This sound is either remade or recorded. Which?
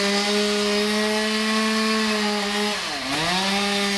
recorded